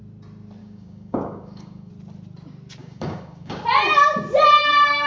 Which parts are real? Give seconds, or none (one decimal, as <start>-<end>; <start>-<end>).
0.0-0.6; 1.9-2.8; 3.6-5.1